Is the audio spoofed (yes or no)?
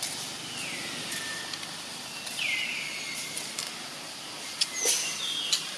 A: no